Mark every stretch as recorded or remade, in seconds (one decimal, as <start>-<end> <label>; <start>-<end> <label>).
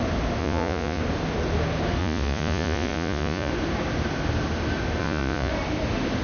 0.0-0.4 recorded; 0.4-1.0 remade; 1.0-2.0 recorded; 2.0-3.5 remade; 3.5-5.0 recorded; 5.0-5.5 remade; 5.5-6.2 recorded